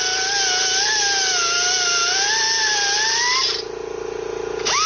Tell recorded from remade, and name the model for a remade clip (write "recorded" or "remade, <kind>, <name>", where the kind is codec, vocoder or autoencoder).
recorded